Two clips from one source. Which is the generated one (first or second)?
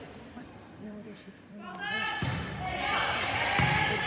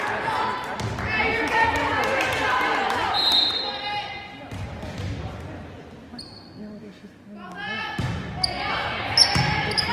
first